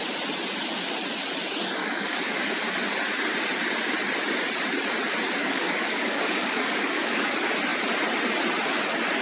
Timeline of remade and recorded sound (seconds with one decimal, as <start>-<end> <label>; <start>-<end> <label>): 0.0-1.8 recorded; 1.8-2.5 remade; 2.5-5.4 recorded; 5.4-7.3 remade; 7.3-9.2 recorded